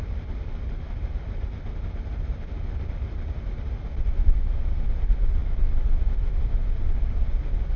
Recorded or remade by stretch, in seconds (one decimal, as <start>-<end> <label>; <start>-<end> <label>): 0.0-7.8 recorded